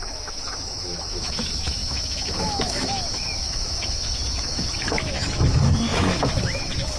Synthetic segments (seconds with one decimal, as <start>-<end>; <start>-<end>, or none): 0.0-7.0